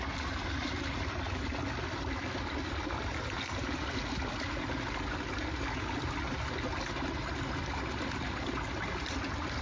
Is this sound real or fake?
real